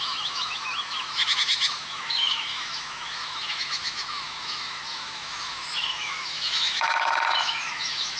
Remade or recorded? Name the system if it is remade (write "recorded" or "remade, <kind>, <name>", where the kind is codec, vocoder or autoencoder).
remade, autoencoder, DAC-VAE